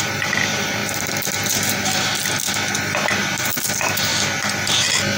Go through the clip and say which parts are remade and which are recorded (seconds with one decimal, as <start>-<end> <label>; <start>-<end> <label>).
0.0-2.2 remade; 2.2-3.2 recorded; 3.2-4.1 remade; 4.1-5.2 recorded